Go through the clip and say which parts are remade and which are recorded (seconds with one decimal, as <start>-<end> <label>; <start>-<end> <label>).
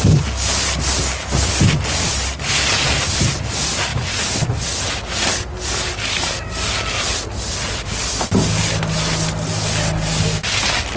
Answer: 0.0-11.0 recorded